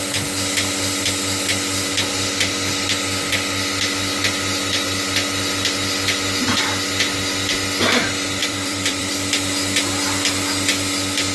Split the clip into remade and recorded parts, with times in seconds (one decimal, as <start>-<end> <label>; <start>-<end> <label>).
0.0-8.4 recorded; 8.4-9.1 remade; 9.1-11.3 recorded